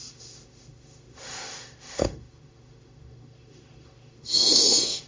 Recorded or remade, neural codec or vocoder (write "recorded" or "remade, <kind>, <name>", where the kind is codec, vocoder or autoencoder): remade, autoencoder, DAC-VAE